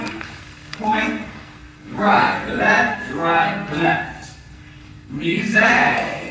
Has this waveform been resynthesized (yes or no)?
yes